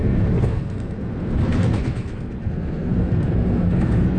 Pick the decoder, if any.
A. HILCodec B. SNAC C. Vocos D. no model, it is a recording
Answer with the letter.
B